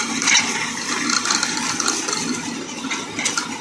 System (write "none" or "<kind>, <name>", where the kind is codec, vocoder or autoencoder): none